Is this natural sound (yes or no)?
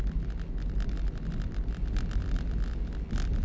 yes